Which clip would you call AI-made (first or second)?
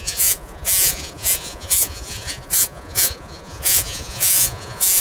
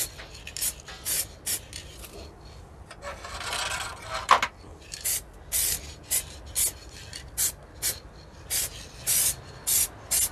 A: first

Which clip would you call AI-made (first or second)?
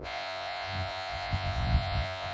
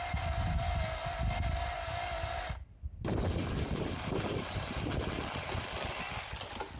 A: first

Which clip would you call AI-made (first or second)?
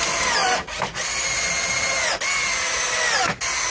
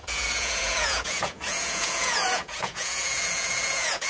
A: second